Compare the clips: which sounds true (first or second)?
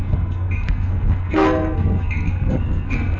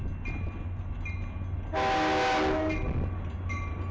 second